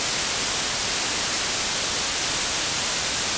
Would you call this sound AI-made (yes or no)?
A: no